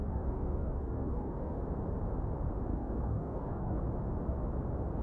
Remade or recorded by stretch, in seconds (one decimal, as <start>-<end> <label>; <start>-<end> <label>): 0.0-1.6 remade; 1.6-2.7 recorded; 2.7-3.8 remade; 3.8-5.0 recorded